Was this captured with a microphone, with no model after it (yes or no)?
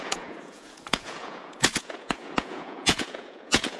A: no